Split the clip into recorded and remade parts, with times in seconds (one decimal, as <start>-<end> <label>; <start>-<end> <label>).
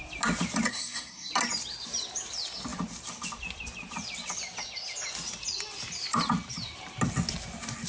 0.0-0.7 recorded; 0.7-1.3 remade; 1.3-7.9 recorded